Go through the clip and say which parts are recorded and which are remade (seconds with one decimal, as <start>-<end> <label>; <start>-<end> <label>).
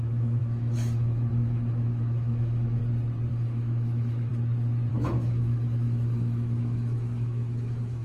0.0-2.8 remade; 2.8-3.3 recorded; 3.3-4.3 remade; 4.3-4.9 recorded; 4.9-8.0 remade